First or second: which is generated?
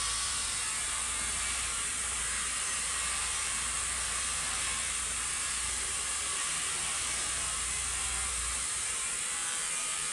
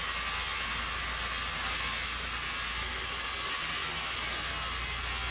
first